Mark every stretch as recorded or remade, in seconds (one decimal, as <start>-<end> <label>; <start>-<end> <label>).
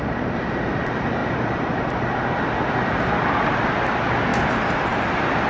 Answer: 0.0-1.2 recorded; 1.2-2.9 remade; 2.9-4.3 recorded; 4.3-5.0 remade; 5.0-5.5 recorded